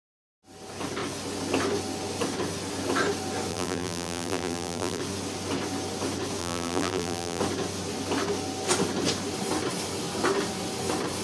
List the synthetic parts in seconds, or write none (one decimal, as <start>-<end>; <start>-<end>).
3.5-5.0; 6.4-7.4